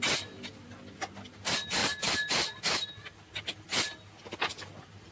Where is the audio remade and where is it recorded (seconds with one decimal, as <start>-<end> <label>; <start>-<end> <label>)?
0.0-1.8 recorded; 1.8-2.6 remade; 2.6-5.1 recorded